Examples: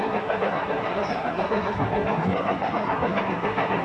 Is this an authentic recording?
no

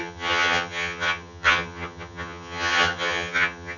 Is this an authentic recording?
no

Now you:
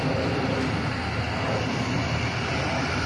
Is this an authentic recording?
yes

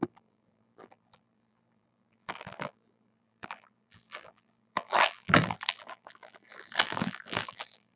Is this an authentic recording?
no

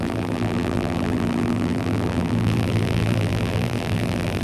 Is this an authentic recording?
no